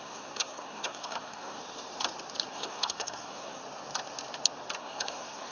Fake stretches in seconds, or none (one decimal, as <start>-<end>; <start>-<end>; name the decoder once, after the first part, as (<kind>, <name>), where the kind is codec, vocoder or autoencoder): 0.0-1.6 (codec, SNAC); 2.5-3.6; 4.8-5.5